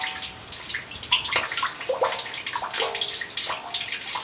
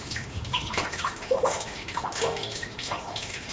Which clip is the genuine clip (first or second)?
first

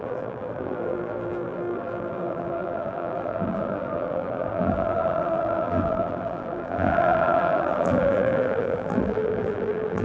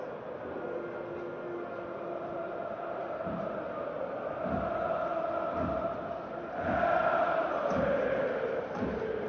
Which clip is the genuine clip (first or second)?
second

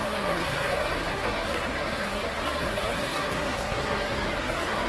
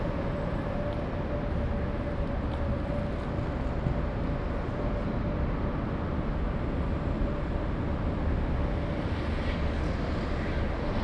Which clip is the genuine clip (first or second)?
second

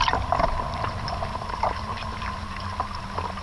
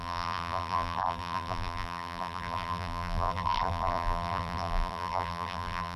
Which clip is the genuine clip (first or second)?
first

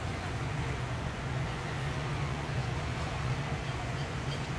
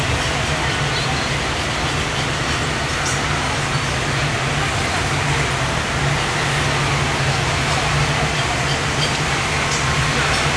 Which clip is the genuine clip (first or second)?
second